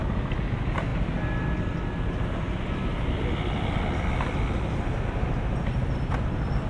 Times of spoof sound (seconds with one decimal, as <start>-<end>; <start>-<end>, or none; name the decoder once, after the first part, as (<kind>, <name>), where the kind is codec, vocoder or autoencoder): none